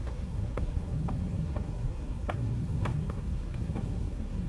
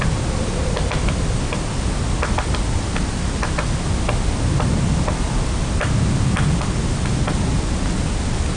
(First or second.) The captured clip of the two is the second